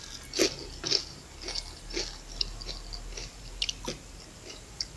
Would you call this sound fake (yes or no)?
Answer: no